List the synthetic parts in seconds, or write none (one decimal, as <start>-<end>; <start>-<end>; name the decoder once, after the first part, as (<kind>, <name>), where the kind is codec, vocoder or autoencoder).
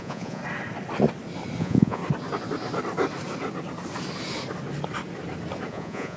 0.0-0.4 (vocoder, Vocos); 1.6-2.0; 5.7-6.2